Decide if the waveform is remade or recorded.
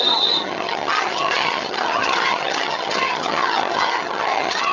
remade